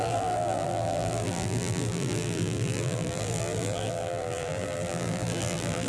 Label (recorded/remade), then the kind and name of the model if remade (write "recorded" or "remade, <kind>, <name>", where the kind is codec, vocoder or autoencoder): remade, vocoder, BigVGAN v2